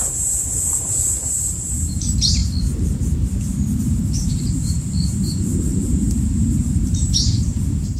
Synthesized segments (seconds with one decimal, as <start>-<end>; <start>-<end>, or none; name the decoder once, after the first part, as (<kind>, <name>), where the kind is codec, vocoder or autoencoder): 0.0-2.4 (vocoder, BigVGAN v2); 3.8-8.0